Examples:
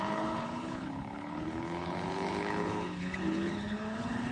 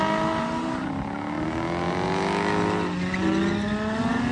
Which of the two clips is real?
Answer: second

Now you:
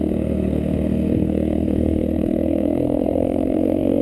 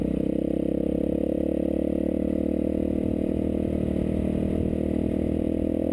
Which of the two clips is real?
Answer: second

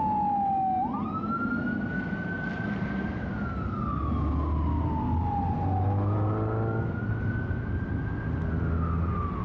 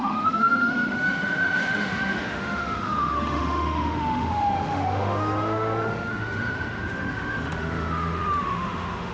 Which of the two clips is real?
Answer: first